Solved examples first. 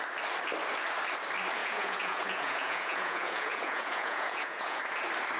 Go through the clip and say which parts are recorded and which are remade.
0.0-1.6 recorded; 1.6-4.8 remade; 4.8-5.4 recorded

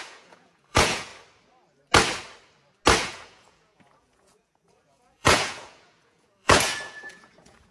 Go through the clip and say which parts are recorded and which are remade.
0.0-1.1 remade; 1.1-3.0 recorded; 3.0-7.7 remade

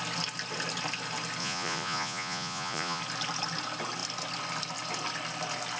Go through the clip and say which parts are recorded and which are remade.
0.0-1.4 recorded; 1.4-3.0 remade; 3.0-5.8 recorded